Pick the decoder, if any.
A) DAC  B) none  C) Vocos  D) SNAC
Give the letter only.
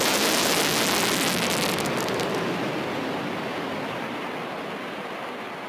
B